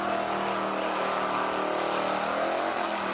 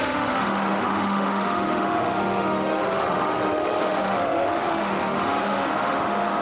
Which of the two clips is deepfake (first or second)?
second